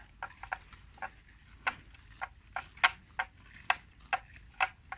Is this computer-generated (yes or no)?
no